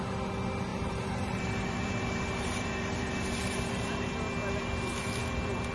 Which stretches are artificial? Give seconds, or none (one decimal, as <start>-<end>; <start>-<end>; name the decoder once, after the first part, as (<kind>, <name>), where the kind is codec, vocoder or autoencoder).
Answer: 0.7-4.1 (vocoder, BigVGAN v2)